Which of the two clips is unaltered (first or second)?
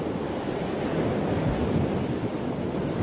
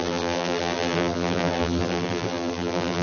first